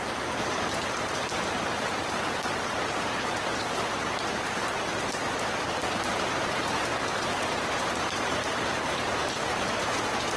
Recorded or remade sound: remade